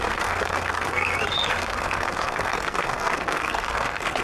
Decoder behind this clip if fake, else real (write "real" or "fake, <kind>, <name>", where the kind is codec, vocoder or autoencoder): fake, codec, SNAC